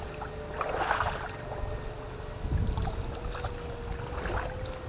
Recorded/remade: recorded